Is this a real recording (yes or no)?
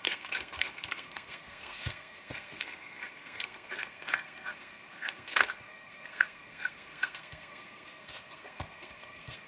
no